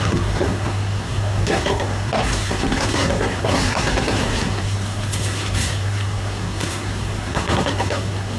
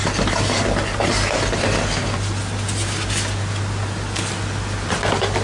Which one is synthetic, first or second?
first